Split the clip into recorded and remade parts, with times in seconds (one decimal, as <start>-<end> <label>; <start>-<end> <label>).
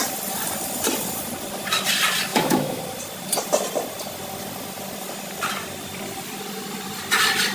0.0-2.3 recorded; 2.3-2.8 remade; 2.8-7.5 recorded